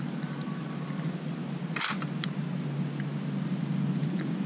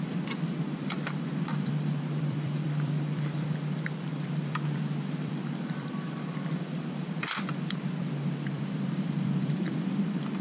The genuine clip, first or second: first